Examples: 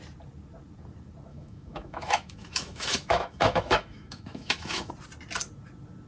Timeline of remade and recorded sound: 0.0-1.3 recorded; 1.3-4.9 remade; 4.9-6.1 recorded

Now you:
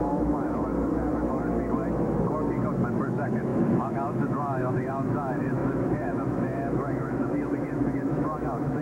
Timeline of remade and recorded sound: 0.0-0.7 remade; 0.7-3.0 recorded; 3.0-8.8 remade

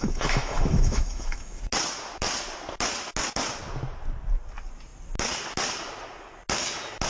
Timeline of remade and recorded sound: 0.0-1.6 remade; 1.6-7.1 recorded

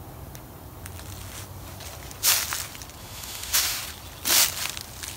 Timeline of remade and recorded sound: 0.0-3.0 recorded; 3.0-3.8 remade; 3.8-5.2 recorded

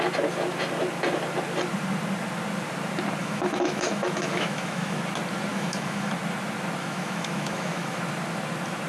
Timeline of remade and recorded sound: 0.0-3.2 recorded; 3.2-5.0 remade; 5.0-5.5 recorded; 5.5-6.1 remade; 6.1-6.8 recorded; 6.8-8.0 remade; 8.0-8.9 recorded

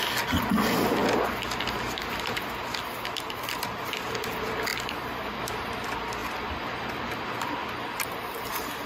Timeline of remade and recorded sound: 0.0-8.9 recorded

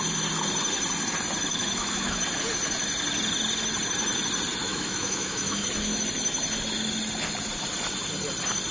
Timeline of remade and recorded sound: 0.0-1.5 recorded; 1.5-2.2 remade; 2.2-4.6 recorded; 4.6-5.7 remade; 5.7-8.7 recorded